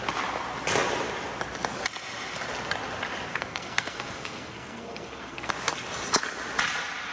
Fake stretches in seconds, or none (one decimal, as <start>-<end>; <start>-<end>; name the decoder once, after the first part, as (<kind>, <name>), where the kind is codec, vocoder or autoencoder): 3.3-5.5 (codec, SNAC)